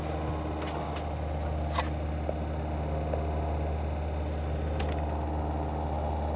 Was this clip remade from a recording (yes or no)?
no